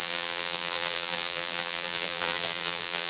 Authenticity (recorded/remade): remade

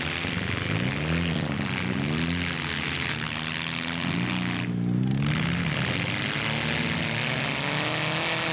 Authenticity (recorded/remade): recorded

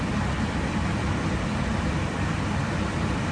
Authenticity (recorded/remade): remade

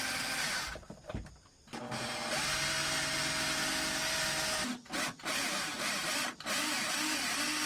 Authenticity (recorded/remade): recorded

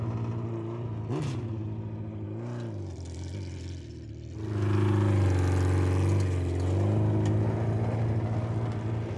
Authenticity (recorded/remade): recorded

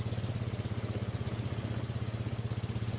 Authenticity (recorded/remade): recorded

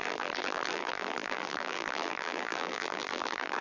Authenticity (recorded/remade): remade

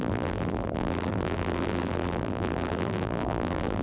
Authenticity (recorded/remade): remade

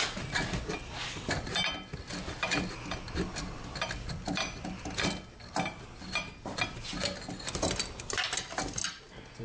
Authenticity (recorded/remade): recorded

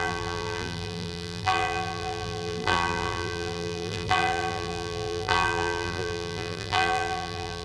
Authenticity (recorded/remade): remade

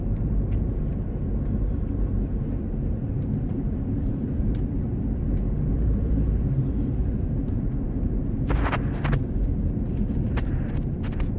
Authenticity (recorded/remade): remade